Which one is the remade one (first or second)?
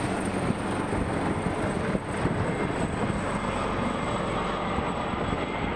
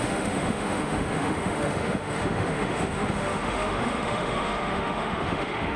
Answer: second